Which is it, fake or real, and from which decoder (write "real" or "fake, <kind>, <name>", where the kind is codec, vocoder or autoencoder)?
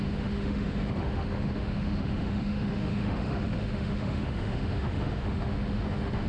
fake, autoencoder, DAC-VAE